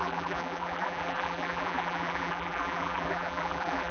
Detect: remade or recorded remade